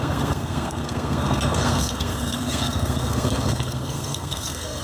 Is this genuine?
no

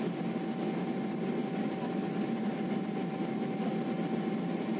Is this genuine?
yes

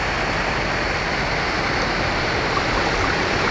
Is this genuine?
yes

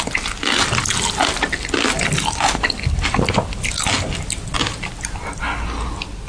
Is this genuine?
yes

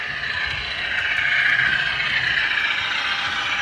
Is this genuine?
yes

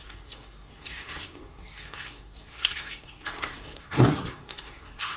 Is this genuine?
no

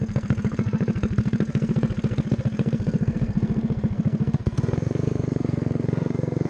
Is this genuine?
no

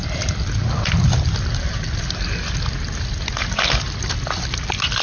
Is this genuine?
yes